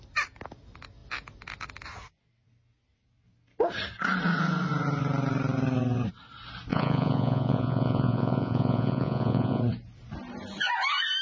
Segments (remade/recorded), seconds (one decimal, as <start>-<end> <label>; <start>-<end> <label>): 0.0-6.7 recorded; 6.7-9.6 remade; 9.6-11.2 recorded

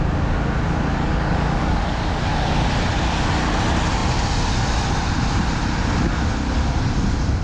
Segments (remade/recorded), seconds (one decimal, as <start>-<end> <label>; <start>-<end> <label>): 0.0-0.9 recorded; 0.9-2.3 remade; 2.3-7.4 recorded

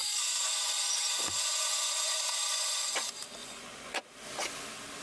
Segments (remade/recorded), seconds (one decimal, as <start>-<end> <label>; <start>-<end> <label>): 0.0-3.0 remade; 3.0-3.4 recorded; 3.4-4.0 remade; 4.0-5.0 recorded

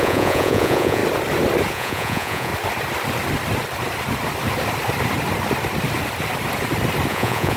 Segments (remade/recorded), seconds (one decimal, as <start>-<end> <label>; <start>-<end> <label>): 0.0-1.0 remade; 1.0-1.7 recorded; 1.7-2.5 remade; 2.5-7.1 recorded; 7.1-7.6 remade

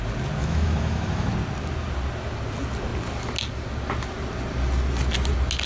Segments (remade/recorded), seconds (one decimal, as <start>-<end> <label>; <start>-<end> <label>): 0.0-0.4 recorded; 0.4-1.3 remade; 1.3-5.7 recorded

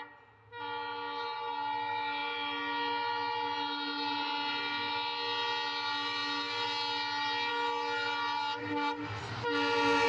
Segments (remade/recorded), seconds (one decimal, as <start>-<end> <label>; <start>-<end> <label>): 0.0-8.6 recorded; 8.6-9.2 remade; 9.2-10.1 recorded

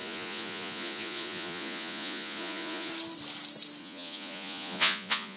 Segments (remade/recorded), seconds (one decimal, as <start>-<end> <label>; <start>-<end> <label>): 0.0-2.9 remade; 2.9-3.8 recorded; 3.8-5.4 remade